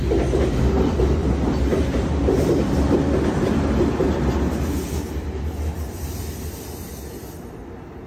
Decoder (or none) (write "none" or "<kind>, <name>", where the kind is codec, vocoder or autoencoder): none